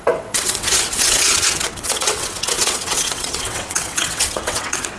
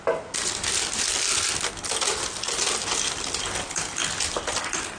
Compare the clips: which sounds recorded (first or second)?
second